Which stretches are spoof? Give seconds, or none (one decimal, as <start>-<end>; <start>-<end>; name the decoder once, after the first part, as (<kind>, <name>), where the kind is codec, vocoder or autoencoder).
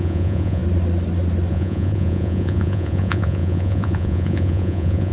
0.0-0.6 (vocoder, Vocos); 1.5-5.1